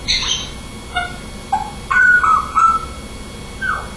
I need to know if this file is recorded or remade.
recorded